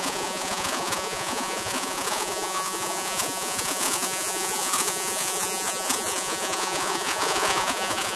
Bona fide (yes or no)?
no